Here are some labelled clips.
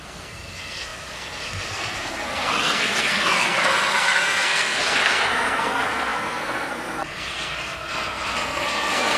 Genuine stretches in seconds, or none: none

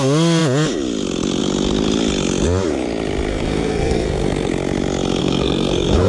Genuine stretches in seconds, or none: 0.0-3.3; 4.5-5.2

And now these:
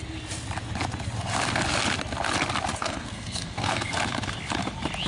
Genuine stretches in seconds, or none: 0.0-2.8; 4.0-5.1

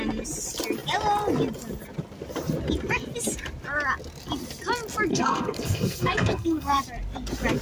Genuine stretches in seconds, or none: 0.0-5.1; 6.8-7.6

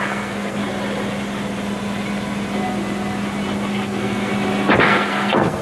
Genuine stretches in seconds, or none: 0.6-3.7; 4.3-4.8

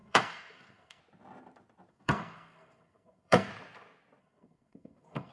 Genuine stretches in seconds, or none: 1.0-1.9; 3.5-4.2

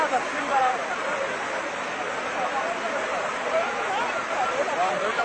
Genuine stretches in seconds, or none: 0.0-5.2